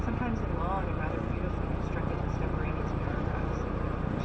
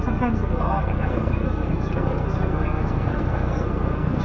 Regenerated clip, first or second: second